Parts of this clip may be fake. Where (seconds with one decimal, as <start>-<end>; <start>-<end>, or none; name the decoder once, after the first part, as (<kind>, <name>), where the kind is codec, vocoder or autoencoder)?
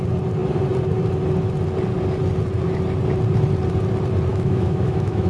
4.3-5.3 (autoencoder, DAC-VAE)